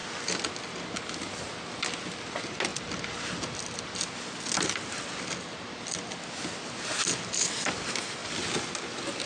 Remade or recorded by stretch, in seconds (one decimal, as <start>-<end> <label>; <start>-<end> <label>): 0.0-9.3 recorded